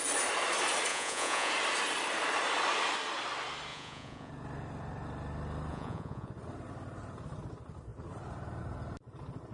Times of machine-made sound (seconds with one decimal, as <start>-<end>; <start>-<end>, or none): 0.9-1.5; 3.7-4.3; 5.7-6.3